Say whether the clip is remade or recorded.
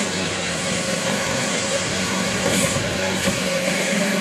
remade